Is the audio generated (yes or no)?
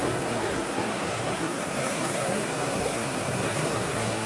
yes